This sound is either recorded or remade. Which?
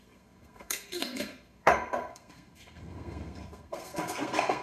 remade